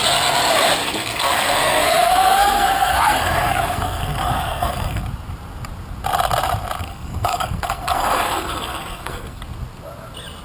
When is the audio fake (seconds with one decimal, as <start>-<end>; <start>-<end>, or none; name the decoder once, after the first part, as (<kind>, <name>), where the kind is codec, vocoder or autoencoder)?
0.8-5.0 (codec, SNAC); 6.8-9.4